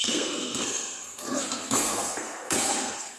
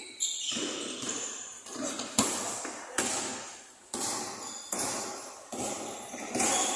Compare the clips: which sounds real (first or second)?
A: second